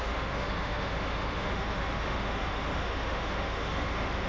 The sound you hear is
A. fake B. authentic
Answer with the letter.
A